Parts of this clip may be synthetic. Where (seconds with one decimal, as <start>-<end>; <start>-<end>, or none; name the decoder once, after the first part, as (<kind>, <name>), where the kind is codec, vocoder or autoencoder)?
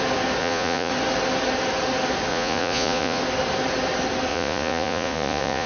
0.4-0.9 (vocoder, Vocos); 2.3-3.2; 4.3-5.7